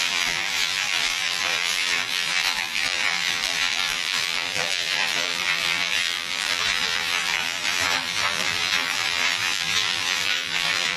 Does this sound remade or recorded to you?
remade